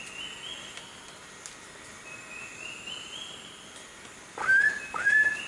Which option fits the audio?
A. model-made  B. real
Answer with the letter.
B